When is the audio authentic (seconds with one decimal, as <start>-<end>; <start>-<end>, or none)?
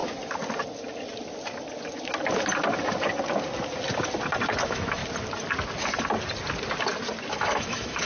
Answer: 0.0-4.6; 5.0-7.3